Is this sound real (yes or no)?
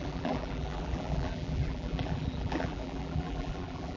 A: no